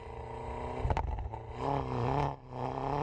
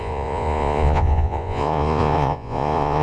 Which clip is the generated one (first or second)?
second